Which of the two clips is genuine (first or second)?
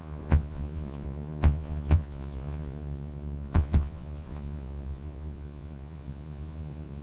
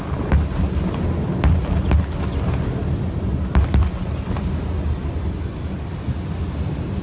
second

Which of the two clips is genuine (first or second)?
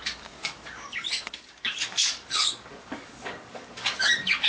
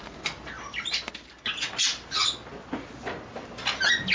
second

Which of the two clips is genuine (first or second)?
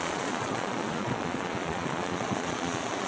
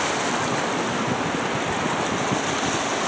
second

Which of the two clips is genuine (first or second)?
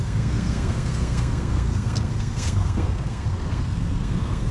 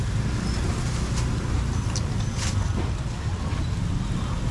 second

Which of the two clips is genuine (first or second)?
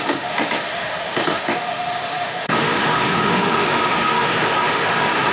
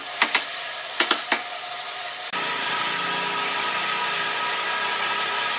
second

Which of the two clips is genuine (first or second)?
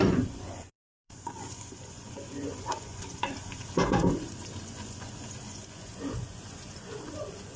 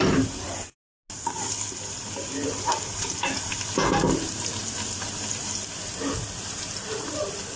second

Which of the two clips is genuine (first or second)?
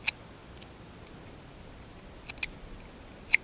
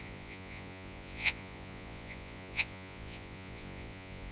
first